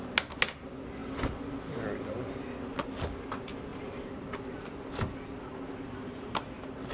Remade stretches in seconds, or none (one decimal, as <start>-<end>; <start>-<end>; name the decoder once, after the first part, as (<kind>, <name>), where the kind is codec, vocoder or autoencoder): none

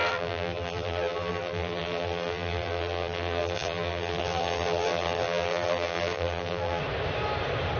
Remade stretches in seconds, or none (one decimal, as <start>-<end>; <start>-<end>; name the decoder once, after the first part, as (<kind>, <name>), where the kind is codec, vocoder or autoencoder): 0.0-6.8 (vocoder, BigVGAN v2)

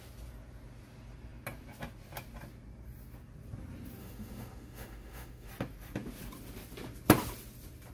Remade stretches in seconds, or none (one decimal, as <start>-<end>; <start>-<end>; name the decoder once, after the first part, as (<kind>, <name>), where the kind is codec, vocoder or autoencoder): 4.0-5.5 (autoencoder, DAC-VAE)

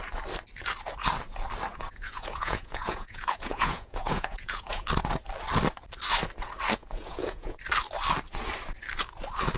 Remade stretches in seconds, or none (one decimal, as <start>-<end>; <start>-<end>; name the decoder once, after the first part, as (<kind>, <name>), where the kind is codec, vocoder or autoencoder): 1.7-4.8 (vocoder, Vocos); 6.8-7.6

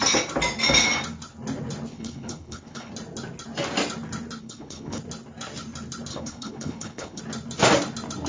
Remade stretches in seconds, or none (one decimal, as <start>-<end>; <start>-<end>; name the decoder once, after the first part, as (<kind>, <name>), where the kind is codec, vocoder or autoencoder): 1.9-2.9 (codec, HILCodec); 4.4-5.0; 6.1-7.2

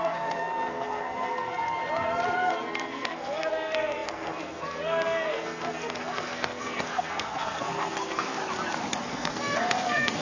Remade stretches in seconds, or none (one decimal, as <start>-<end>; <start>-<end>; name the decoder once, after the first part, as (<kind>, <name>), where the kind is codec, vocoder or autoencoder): 0.0-1.8 (codec, SNAC); 2.5-8.4; 9.0-10.2